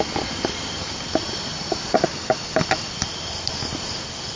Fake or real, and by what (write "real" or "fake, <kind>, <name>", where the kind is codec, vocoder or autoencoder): real